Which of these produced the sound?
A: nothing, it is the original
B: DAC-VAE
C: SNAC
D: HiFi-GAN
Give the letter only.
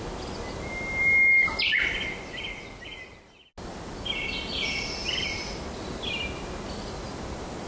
A